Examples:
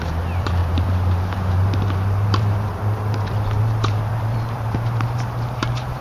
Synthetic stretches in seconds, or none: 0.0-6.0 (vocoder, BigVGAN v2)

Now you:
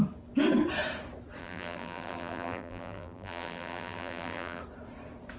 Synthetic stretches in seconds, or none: 1.4-4.6 (vocoder, BigVGAN v2)

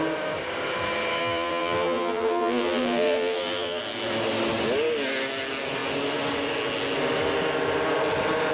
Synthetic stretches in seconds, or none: 1.2-3.8 (vocoder, BigVGAN v2)